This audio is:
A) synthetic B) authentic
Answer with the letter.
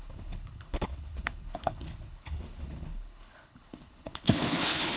A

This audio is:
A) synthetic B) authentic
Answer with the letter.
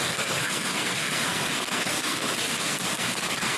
A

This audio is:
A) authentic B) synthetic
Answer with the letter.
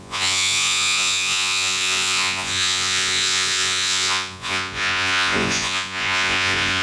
B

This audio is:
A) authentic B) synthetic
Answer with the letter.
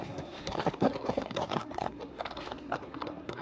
B